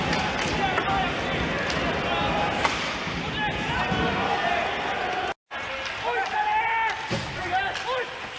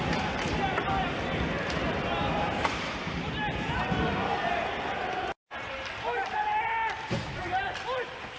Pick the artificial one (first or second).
second